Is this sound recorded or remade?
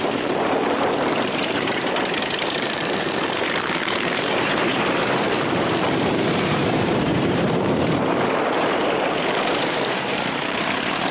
remade